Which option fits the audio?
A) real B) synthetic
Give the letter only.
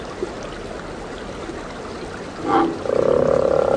A